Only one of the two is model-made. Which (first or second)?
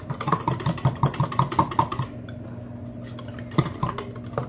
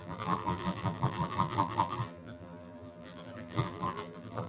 second